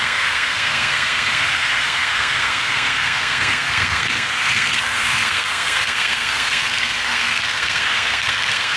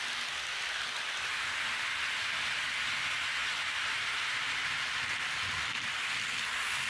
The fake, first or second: first